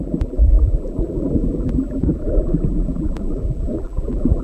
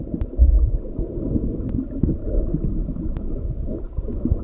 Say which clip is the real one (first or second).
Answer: second